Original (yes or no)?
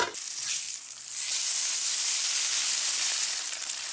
no